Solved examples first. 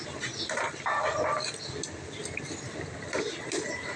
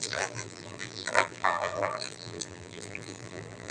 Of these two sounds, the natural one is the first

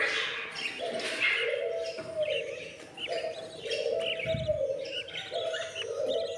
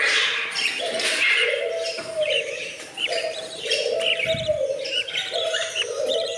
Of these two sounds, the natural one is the first